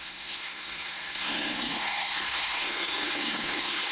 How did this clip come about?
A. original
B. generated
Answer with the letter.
B